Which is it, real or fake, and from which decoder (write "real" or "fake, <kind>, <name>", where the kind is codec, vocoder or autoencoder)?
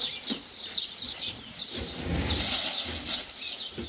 real